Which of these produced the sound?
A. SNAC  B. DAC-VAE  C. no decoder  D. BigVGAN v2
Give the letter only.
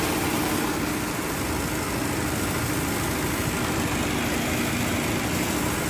C